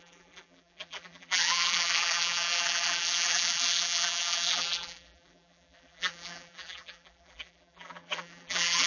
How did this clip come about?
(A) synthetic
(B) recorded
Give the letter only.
A